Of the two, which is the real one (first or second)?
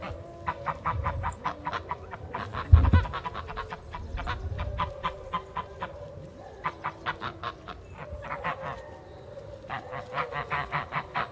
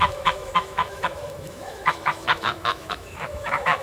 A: first